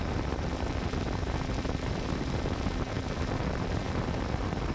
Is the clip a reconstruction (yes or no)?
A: no